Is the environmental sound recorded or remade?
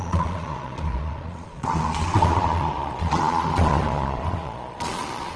remade